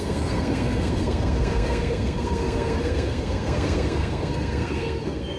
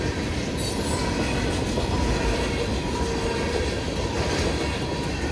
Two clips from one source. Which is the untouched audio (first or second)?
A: second